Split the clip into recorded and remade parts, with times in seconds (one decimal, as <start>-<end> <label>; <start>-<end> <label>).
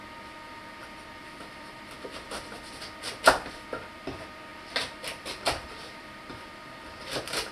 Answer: 0.0-1.2 recorded; 1.2-2.3 remade; 2.3-4.5 recorded; 4.5-6.8 remade; 6.8-7.5 recorded